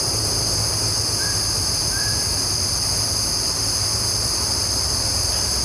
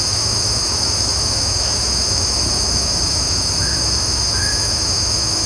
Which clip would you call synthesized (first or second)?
second